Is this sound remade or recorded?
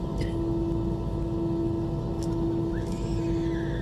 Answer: recorded